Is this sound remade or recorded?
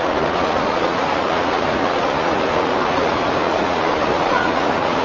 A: remade